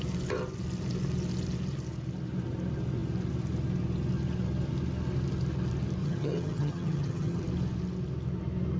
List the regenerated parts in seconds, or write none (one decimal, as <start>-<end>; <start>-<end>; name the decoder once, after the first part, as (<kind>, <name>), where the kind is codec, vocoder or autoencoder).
6.0-7.4 (vocoder, HiFi-GAN)